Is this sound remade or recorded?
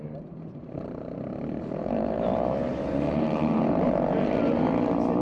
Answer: remade